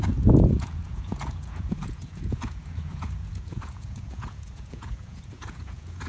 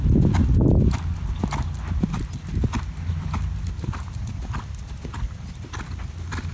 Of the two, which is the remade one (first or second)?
first